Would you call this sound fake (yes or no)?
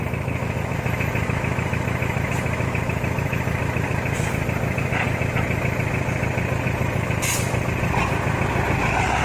no